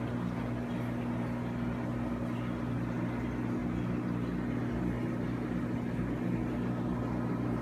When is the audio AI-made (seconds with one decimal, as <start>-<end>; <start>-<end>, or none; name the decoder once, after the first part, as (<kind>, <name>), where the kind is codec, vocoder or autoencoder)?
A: none